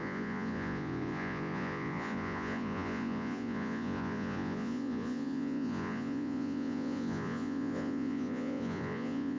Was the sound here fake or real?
fake